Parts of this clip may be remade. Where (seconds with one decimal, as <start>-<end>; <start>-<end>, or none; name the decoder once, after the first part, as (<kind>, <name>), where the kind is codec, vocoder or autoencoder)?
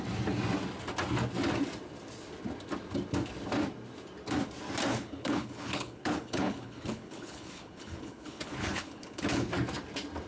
4.9-9.5 (codec, HILCodec)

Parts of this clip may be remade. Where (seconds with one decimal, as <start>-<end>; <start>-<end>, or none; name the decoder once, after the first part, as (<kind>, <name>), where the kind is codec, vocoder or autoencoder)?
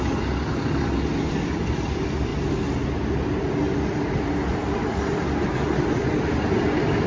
none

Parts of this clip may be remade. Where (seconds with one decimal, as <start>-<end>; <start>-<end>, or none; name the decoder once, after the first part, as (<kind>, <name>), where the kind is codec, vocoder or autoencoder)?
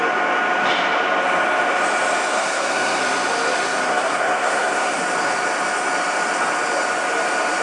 2.3-3.0 (codec, SNAC); 3.9-5.0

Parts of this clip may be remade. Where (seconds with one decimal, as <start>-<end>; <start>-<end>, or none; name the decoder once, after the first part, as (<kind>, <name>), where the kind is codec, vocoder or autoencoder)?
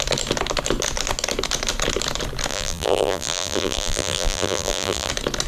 2.5-5.1 (vocoder, BigVGAN v2)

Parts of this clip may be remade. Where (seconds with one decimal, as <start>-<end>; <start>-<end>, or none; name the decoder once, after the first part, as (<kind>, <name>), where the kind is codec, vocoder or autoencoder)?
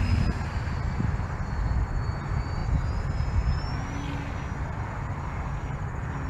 none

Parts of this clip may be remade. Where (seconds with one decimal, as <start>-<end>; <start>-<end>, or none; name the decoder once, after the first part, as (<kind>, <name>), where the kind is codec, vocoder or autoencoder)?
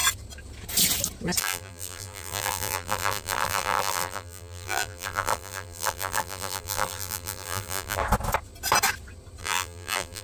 1.4-8.0 (vocoder, BigVGAN v2); 9.4-10.2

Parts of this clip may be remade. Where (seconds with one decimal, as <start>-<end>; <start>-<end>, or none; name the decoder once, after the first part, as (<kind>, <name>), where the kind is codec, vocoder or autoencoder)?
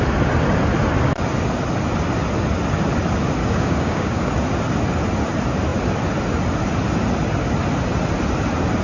3.4-4.3 (codec, DAC)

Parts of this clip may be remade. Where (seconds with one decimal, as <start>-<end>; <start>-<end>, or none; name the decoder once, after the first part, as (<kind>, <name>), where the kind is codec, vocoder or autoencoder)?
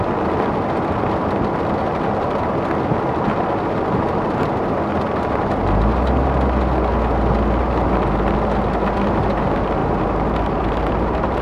9.8-11.4 (vocoder, BigVGAN v2)